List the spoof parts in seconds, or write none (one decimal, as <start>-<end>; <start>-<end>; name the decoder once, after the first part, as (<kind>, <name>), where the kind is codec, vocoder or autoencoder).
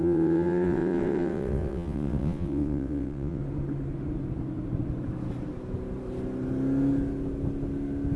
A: 0.0-3.4 (vocoder, WaveNeXt)